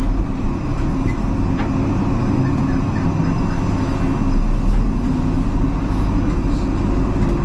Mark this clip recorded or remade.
recorded